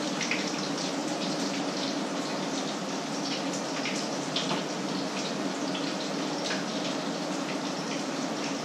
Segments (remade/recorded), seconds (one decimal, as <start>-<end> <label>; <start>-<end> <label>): 0.0-8.6 recorded